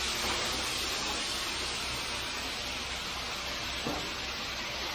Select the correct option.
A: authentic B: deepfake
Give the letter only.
A